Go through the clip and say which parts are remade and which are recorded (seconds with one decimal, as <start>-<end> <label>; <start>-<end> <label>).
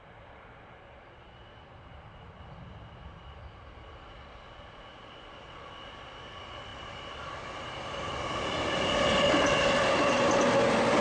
0.0-11.0 recorded